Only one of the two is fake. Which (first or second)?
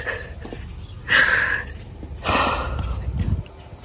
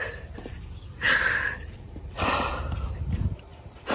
second